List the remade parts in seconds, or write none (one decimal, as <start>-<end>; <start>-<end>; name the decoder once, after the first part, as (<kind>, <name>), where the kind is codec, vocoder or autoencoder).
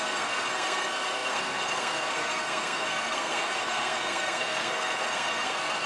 0.0-5.9 (codec, SNAC)